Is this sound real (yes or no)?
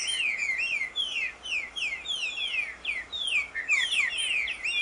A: yes